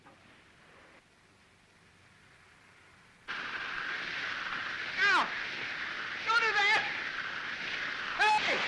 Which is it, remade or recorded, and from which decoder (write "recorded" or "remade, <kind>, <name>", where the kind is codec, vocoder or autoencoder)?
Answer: recorded